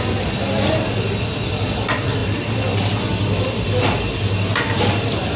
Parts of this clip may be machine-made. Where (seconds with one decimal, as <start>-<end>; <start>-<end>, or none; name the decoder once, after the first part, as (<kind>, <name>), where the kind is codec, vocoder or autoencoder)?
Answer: none